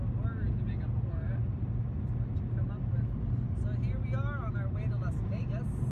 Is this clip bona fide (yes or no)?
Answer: yes